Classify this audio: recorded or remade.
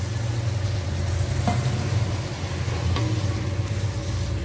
recorded